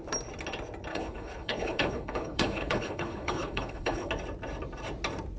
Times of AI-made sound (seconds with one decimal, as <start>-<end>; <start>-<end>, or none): 0.9-4.1